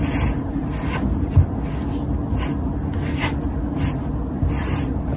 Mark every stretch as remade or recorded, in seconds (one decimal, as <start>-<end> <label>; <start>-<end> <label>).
0.0-5.2 recorded